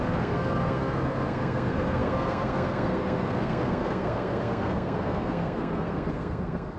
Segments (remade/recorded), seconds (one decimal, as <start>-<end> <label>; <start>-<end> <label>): 0.0-6.8 remade